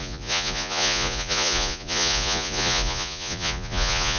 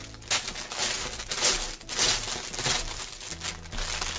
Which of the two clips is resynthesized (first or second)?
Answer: first